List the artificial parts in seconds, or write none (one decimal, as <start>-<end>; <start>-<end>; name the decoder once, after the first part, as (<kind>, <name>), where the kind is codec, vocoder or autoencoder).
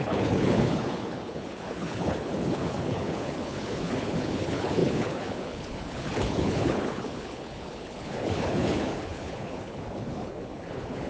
0.0-11.1 (codec, HILCodec)